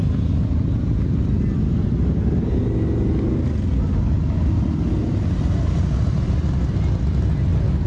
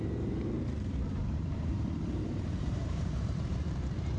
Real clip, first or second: first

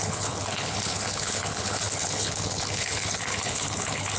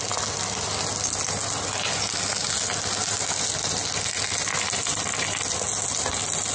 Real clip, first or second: second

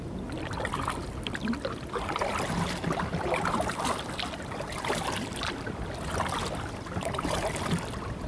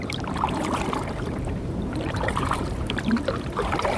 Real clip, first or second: first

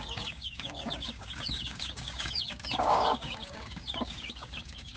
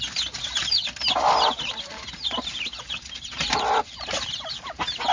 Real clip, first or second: second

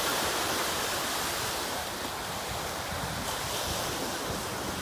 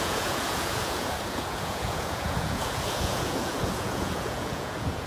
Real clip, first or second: first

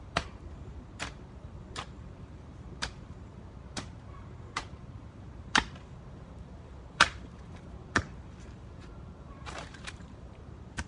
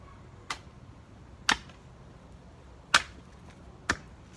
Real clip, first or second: second